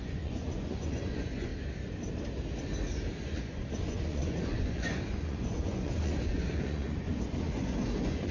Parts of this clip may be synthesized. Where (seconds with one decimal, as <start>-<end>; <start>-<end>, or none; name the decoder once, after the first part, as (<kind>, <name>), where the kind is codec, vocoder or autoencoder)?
0.0-1.5 (vocoder, Vocos); 3.2-8.3